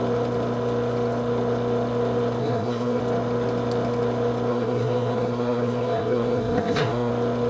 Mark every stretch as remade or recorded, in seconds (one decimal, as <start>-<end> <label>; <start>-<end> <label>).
0.0-2.4 recorded; 2.4-3.0 remade; 3.0-4.5 recorded; 4.5-7.1 remade; 7.1-7.5 recorded